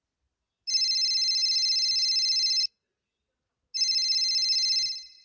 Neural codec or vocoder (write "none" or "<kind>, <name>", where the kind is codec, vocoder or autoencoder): none